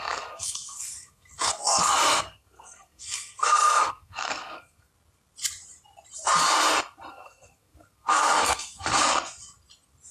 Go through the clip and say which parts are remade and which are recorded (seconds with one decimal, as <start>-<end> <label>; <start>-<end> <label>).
0.0-4.9 remade; 4.9-7.1 recorded; 7.1-9.0 remade; 9.0-10.1 recorded